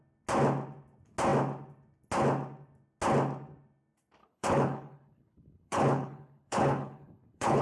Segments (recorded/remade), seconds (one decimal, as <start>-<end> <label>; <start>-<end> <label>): 0.0-4.2 recorded; 4.2-7.6 remade